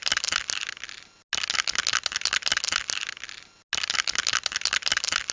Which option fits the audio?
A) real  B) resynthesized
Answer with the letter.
A